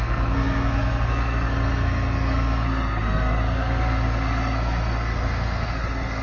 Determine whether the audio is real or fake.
fake